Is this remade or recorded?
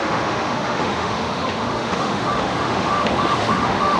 remade